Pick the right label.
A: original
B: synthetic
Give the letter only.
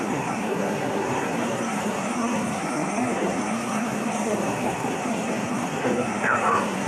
B